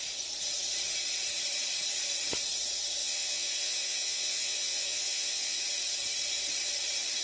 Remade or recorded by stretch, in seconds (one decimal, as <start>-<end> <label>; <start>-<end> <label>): 0.0-3.0 recorded; 3.0-5.6 remade; 5.6-7.2 recorded